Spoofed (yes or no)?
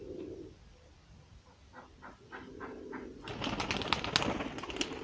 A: no